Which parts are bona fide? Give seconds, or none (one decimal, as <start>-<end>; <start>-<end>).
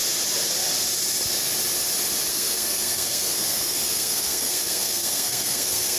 0.0-2.3